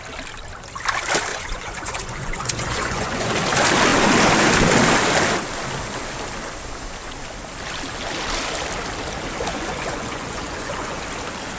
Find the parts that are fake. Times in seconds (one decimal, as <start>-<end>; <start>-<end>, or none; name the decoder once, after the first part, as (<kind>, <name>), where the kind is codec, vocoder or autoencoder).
1.3-3.3 (vocoder, Vocos); 9.5-11.0